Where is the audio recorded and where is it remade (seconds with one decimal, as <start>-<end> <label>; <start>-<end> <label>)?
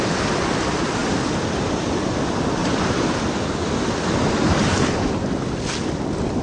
0.0-1.0 recorded; 1.0-1.9 remade; 1.9-2.6 recorded; 2.6-5.3 remade; 5.3-6.4 recorded